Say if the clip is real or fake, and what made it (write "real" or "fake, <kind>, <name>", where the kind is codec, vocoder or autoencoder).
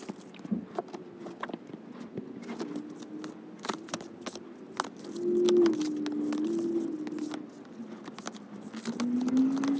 real